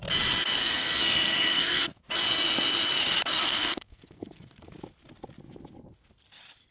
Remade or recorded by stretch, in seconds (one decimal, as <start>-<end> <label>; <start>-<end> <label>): 0.0-0.6 recorded; 0.6-2.1 remade; 2.1-3.4 recorded; 3.4-4.7 remade; 4.7-6.7 recorded